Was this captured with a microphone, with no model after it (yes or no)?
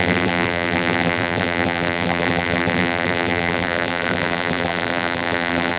no